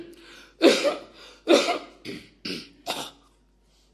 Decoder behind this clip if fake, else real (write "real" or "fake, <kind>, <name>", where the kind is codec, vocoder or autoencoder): real